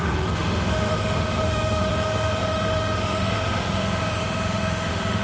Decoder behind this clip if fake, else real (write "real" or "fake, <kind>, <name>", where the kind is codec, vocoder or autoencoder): fake, autoencoder, DAC-VAE